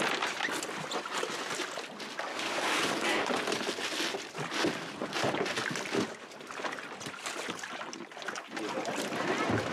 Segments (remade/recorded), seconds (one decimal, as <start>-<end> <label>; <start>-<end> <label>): 0.0-2.3 recorded; 2.3-3.3 remade; 3.3-9.7 recorded